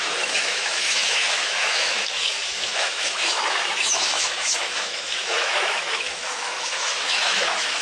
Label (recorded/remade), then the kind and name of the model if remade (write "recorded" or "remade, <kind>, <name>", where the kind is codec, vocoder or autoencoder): remade, autoencoder, DAC-VAE